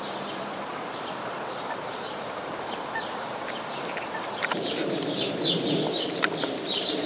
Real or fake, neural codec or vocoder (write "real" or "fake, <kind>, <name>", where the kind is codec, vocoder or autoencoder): fake, vocoder, BigVGAN v2